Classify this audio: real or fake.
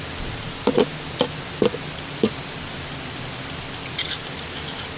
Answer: real